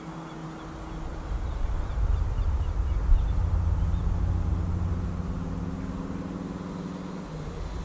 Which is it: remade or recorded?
recorded